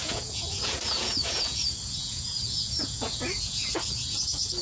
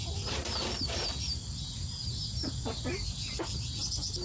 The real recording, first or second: second